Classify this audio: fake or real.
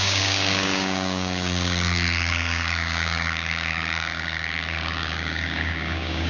fake